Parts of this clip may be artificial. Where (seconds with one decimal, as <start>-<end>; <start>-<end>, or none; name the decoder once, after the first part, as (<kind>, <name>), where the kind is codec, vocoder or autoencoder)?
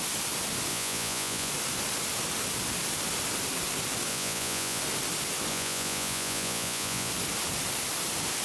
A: 0.7-1.5 (vocoder, Vocos); 4.1-4.8; 5.5-7.1